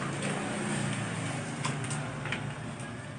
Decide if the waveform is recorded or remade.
recorded